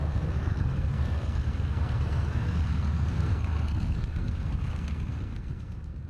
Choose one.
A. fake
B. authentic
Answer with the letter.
A